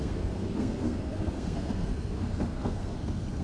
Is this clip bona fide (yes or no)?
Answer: no